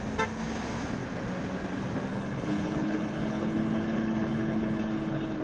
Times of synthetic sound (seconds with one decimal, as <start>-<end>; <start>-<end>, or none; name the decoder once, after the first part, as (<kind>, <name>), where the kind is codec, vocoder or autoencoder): 2.1-5.4 (codec, HILCodec)